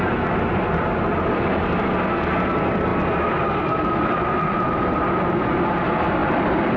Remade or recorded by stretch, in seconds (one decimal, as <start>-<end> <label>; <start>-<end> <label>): 0.0-6.2 recorded; 6.2-6.8 remade